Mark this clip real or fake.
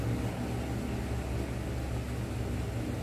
real